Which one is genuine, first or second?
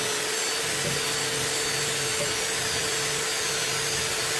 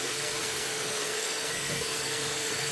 first